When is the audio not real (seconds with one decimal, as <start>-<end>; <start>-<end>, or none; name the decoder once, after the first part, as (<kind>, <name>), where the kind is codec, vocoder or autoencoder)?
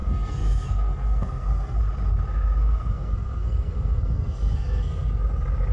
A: 0.0-1.8 (codec, SNAC); 2.3-5.2